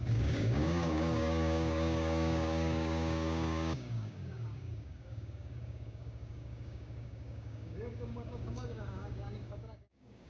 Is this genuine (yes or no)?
no